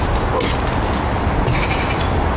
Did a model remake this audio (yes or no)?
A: no